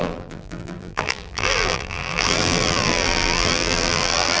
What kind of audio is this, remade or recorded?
remade